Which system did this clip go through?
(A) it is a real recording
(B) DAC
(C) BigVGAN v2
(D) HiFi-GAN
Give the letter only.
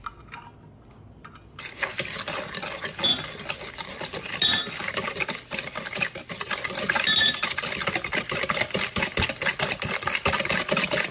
A